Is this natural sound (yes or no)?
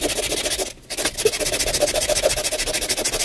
yes